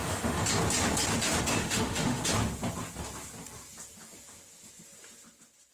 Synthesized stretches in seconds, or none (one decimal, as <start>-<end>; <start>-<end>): 0.0-0.4; 1.6-2.2